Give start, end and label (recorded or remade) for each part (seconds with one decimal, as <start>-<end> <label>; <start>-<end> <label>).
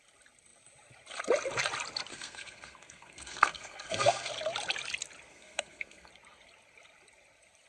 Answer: 0.0-2.1 recorded; 2.1-4.3 remade; 4.3-5.3 recorded; 5.3-6.1 remade; 6.1-7.7 recorded